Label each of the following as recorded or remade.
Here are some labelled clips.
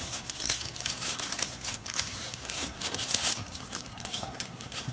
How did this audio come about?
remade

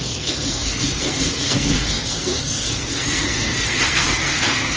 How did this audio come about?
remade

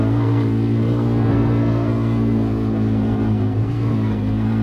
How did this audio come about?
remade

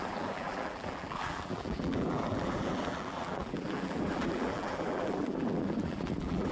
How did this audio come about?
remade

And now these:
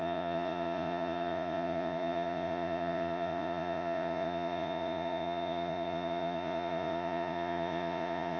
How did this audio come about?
remade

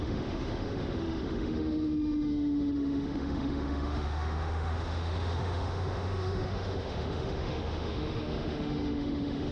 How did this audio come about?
remade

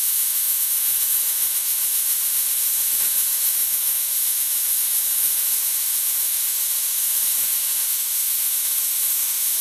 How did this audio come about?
remade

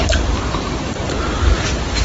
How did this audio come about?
remade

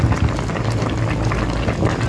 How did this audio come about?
recorded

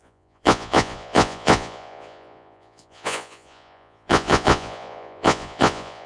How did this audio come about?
remade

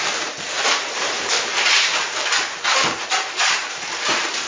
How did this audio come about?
remade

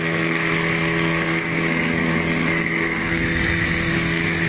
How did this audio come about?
remade